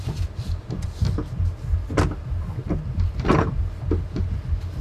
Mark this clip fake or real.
real